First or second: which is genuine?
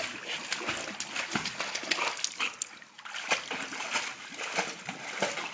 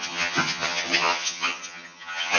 first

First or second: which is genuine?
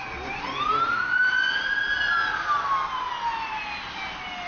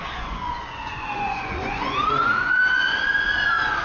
first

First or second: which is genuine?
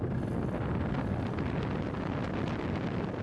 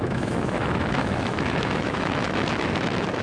first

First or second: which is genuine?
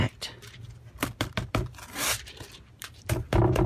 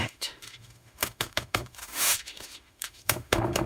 first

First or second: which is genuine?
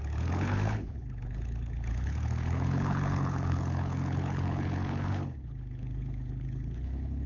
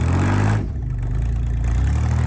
second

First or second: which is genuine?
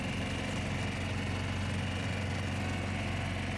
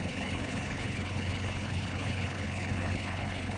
first